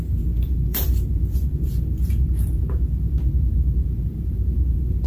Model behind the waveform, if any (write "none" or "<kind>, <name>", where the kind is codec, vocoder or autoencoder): vocoder, BigVGAN v2